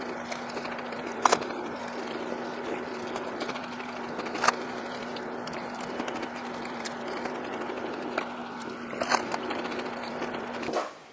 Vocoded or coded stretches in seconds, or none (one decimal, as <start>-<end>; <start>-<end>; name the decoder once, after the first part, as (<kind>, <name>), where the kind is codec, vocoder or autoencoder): 0.0-11.1 (vocoder, BigVGAN v2)